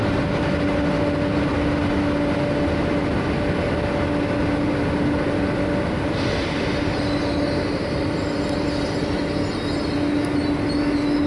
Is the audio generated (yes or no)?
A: no